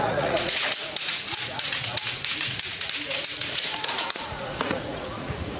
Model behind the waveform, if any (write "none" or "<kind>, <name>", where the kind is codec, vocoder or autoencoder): vocoder, Vocos